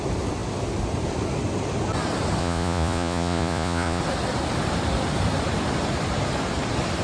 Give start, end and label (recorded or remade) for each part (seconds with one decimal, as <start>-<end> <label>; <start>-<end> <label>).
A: 0.0-2.4 recorded; 2.4-4.0 remade; 4.0-7.0 recorded